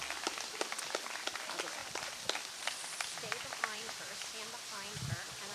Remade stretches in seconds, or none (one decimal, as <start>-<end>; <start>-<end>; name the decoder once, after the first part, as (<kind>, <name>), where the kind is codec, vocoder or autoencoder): none